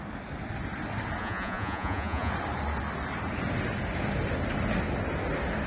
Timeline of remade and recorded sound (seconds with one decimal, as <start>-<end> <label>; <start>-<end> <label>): 0.0-1.2 recorded; 1.2-2.3 remade; 2.3-5.7 recorded